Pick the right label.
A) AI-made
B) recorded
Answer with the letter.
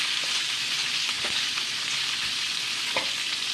A